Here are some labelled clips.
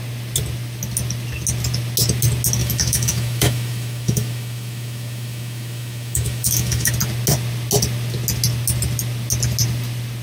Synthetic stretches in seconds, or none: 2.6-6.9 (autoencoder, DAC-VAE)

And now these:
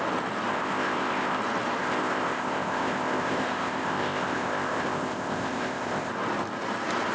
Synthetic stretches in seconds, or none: 0.5-1.4 (codec, ZipCodec); 1.8-6.1

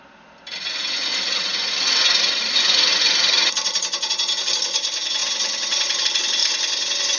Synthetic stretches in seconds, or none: 1.1-4.1 (vocoder, BigVGAN v2)

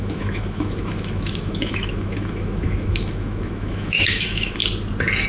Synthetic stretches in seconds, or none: 0.0-4.6 (autoencoder, DAC-VAE)

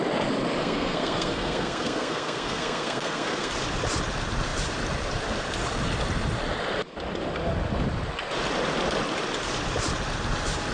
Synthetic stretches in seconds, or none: 0.6-3.5 (codec, SNAC)

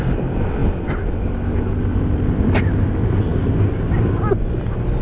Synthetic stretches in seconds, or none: none

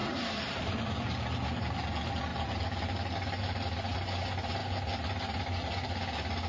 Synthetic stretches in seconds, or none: 0.0-0.8 (vocoder, BigVGAN v2); 2.3-3.8